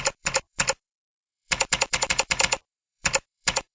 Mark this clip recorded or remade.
remade